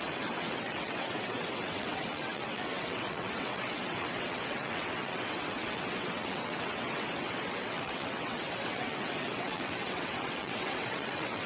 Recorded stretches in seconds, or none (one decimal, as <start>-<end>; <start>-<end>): none